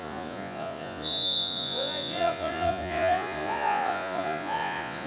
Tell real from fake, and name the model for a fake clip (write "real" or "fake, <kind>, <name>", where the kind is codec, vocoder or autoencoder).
fake, vocoder, Vocos